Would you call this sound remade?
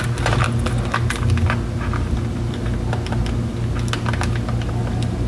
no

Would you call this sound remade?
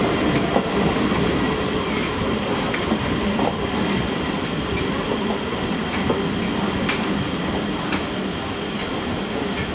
no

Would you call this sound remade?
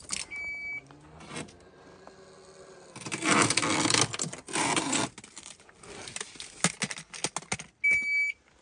no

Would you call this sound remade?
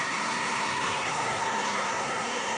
yes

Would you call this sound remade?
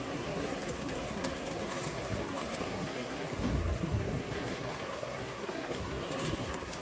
yes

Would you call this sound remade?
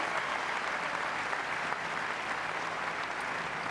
no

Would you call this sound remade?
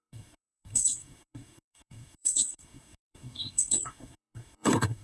yes